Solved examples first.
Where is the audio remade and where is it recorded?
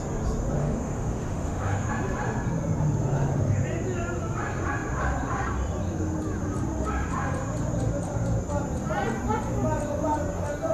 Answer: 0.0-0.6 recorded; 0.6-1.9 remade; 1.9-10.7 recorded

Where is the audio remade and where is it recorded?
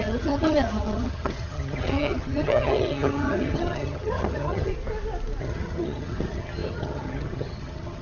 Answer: 0.0-4.7 remade; 4.7-5.4 recorded; 5.4-8.0 remade